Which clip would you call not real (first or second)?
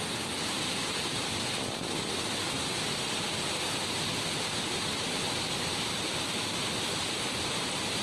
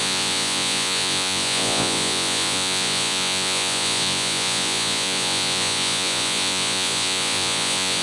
second